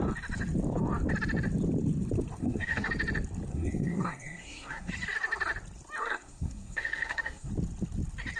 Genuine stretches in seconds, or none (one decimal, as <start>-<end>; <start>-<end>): 0.0-2.4; 2.9-3.5; 4.9-6.0; 7.5-8.4